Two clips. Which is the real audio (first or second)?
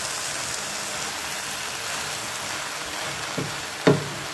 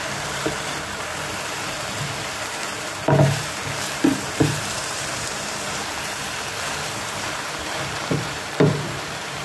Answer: first